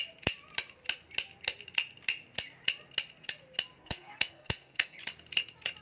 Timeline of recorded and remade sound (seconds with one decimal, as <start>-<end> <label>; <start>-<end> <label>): 0.0-3.8 recorded; 3.8-5.0 remade; 5.0-5.8 recorded